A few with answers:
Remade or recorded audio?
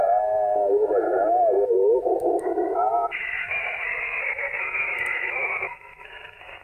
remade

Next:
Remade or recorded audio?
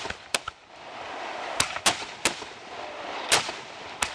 remade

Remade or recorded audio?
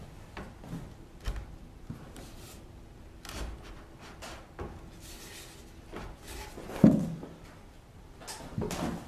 recorded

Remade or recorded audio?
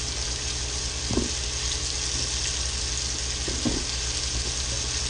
recorded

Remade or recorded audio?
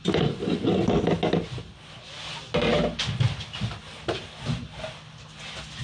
recorded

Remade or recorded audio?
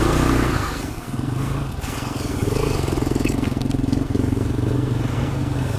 remade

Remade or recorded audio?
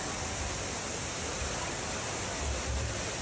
recorded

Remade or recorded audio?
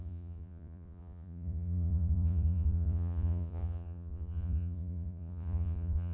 remade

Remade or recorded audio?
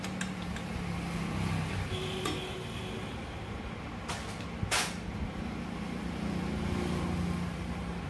recorded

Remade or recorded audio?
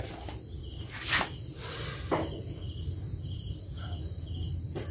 recorded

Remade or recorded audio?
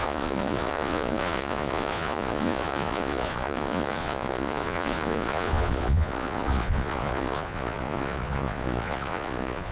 remade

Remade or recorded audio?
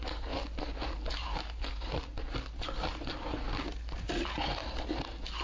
recorded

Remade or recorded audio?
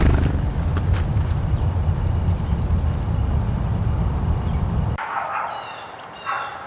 recorded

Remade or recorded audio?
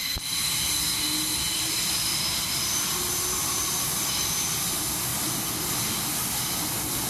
recorded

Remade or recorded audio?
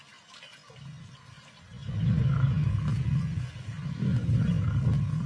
recorded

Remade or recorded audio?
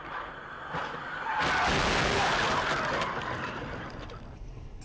recorded